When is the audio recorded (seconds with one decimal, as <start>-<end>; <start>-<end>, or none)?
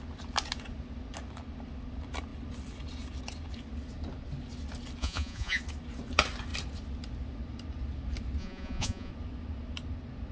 0.0-5.0; 5.6-8.4; 9.1-10.3